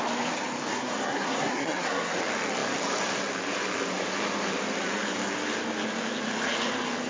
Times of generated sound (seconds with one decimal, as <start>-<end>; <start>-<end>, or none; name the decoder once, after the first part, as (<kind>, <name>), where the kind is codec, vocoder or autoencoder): 0.7-2.2 (codec, SNAC)